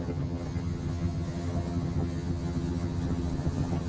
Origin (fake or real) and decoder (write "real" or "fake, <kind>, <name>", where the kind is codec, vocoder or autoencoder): fake, vocoder, HiFi-GAN